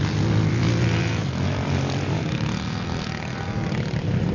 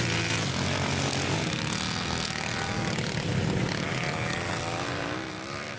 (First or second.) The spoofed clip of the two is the first